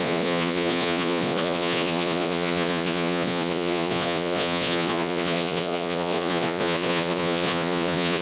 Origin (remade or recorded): remade